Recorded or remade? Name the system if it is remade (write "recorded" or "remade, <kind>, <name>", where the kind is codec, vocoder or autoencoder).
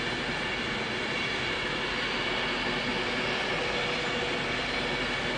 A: recorded